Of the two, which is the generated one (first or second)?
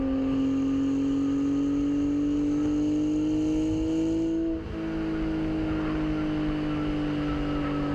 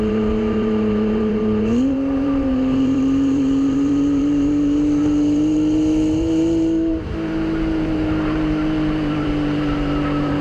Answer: second